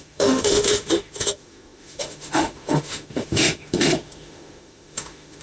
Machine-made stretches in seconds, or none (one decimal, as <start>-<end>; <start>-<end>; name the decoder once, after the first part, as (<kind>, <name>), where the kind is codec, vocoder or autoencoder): 0.0-5.4 (autoencoder, DAC-VAE)